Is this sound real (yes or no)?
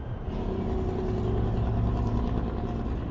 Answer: yes